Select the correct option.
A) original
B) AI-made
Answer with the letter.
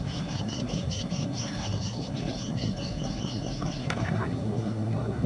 B